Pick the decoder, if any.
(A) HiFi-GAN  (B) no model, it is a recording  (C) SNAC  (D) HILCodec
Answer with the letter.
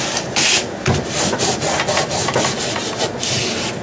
B